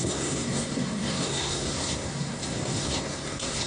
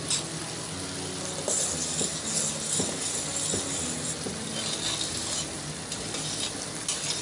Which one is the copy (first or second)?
first